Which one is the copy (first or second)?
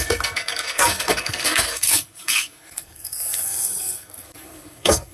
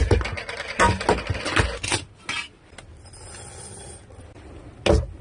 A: first